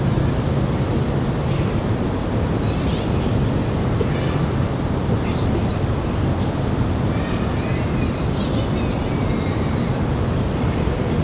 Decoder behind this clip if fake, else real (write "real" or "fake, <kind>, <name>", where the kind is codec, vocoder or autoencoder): real